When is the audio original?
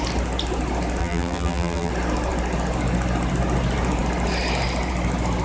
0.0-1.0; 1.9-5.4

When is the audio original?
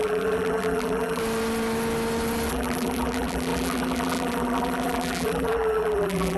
1.2-2.5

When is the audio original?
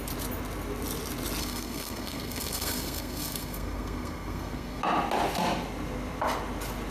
0.0-1.4; 4.8-6.9